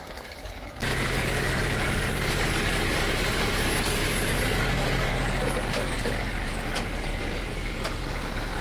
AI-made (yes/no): yes